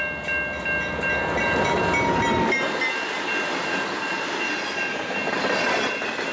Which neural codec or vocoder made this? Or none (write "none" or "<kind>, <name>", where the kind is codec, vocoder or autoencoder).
none